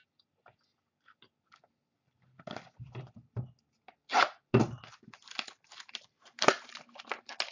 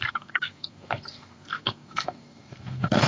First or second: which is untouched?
first